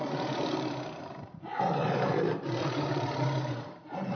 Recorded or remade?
remade